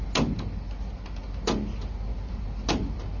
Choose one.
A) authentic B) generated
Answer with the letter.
A